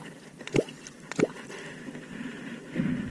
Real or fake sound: real